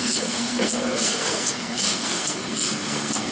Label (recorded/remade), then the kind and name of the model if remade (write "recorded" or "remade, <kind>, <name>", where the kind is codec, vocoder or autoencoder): remade, codec, SNAC